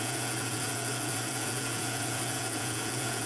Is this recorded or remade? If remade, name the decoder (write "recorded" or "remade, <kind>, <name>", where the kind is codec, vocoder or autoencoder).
remade, vocoder, Vocos